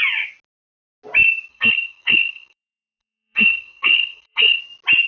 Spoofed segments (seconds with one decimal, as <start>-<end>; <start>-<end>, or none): 1.5-4.6